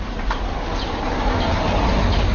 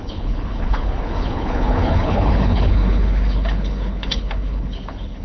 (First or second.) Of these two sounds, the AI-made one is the second